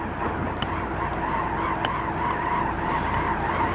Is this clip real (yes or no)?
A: yes